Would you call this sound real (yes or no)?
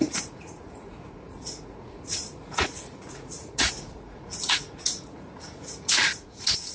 no